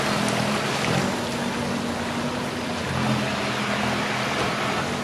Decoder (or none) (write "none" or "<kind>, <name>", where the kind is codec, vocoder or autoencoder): none